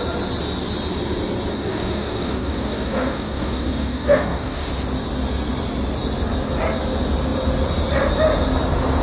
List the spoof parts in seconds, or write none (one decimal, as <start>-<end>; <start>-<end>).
1.5-4.7